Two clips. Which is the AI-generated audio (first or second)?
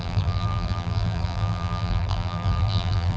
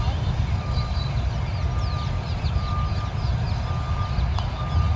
first